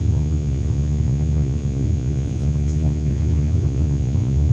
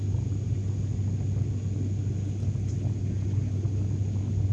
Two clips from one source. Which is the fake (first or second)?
first